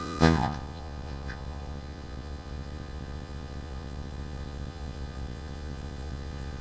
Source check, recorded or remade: remade